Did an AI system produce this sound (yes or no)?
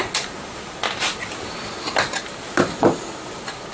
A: no